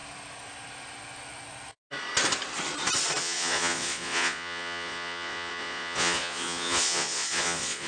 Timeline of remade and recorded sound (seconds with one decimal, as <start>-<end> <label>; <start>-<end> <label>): 0.0-3.2 recorded; 3.2-7.9 remade